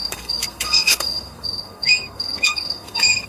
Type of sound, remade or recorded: remade